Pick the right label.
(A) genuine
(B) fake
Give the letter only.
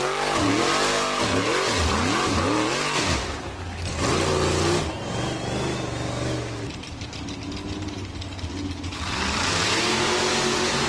A